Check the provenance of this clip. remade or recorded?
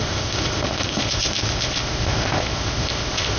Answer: remade